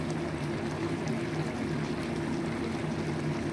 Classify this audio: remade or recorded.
recorded